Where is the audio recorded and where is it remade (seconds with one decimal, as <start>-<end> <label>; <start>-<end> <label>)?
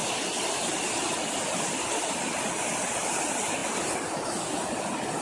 0.0-5.2 recorded